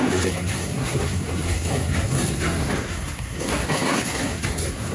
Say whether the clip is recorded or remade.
remade